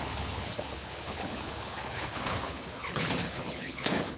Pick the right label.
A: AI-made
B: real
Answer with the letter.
A